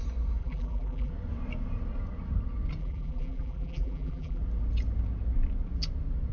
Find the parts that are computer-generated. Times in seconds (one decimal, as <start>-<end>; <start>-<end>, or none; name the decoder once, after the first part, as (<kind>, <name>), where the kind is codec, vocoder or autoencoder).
0.4-1.1 (vocoder, BigVGAN v2); 2.8-4.4

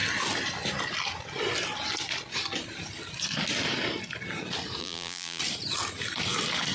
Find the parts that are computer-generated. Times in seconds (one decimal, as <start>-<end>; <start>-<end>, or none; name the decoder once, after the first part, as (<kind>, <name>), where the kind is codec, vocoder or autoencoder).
4.8-5.4 (vocoder, BigVGAN v2)

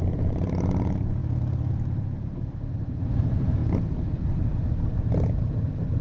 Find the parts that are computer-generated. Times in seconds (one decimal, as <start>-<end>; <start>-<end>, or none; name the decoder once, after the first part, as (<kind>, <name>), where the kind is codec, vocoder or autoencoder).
0.0-1.2 (vocoder, BigVGAN v2); 1.7-6.0

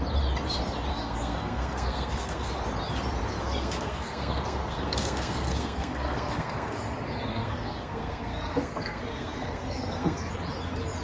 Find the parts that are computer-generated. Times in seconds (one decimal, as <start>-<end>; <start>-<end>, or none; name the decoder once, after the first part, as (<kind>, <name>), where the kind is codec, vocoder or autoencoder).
0.9-2.5 (codec, SNAC); 3.4-6.8; 7.3-10.3

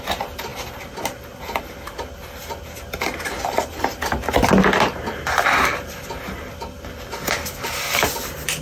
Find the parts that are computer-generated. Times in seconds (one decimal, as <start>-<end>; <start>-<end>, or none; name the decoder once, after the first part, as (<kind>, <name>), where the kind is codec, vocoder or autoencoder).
none

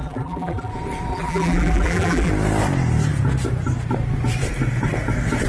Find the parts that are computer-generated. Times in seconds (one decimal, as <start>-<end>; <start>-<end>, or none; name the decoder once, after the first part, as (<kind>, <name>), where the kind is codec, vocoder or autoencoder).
0.0-0.7 (vocoder, BigVGAN v2); 1.1-2.3